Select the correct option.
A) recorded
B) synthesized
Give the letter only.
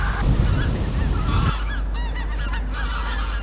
A